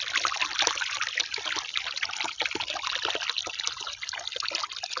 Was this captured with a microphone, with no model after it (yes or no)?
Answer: yes